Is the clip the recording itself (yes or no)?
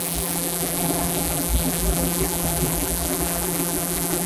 no